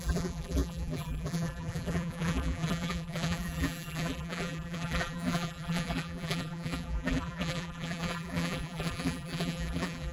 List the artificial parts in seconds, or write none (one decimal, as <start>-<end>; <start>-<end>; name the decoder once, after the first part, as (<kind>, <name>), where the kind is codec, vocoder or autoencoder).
0.0-10.1 (vocoder, BigVGAN v2)